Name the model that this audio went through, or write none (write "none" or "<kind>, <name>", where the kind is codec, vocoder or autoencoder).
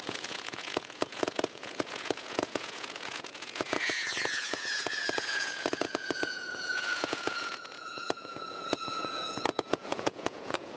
vocoder, Vocos